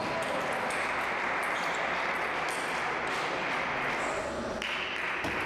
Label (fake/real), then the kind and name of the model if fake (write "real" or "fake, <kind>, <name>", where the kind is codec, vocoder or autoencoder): real